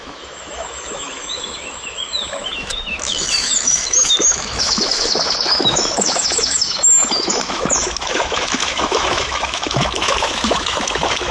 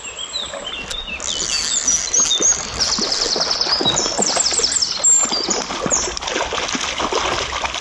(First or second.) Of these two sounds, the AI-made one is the first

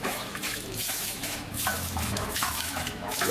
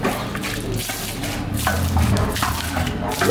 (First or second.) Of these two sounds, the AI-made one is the first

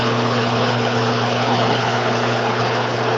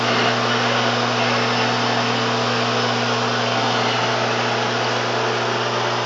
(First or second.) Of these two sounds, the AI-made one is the first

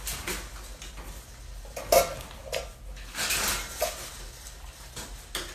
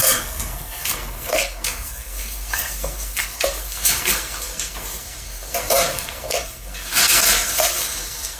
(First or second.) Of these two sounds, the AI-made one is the second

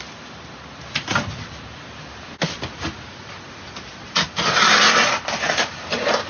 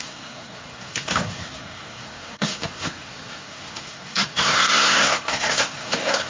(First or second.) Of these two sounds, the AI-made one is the second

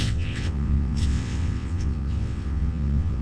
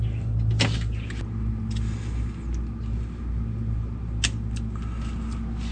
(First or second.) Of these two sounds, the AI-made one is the first